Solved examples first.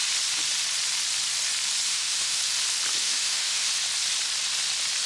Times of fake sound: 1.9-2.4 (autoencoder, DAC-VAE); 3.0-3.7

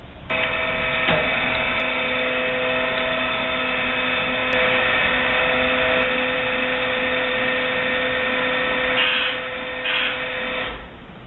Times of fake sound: none

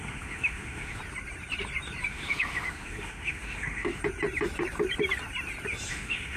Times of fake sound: 0.0-1.0 (autoencoder, DAC-VAE); 2.1-4.0; 5.9-6.4

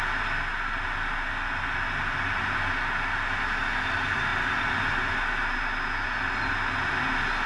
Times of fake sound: none

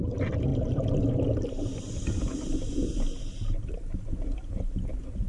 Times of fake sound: none

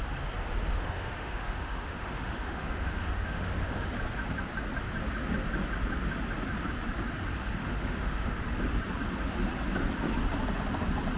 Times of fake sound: 0.7-3.9 (autoencoder, DAC-VAE); 7.6-8.4

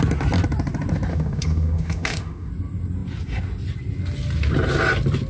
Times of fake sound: 1.1-2.5 (autoencoder, DAC-VAE)